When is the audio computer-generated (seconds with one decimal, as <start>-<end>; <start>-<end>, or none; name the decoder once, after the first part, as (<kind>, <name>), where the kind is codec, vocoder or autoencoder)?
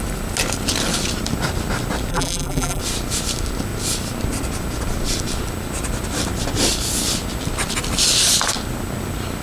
2.1-2.8 (vocoder, BigVGAN v2)